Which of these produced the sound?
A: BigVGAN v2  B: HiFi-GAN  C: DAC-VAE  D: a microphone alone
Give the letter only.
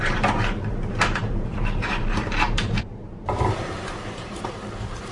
A